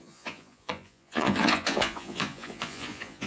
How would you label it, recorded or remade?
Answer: remade